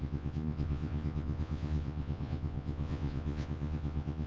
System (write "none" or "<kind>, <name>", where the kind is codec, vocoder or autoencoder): vocoder, Vocos